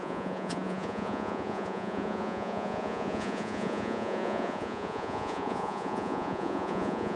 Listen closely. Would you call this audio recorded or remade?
remade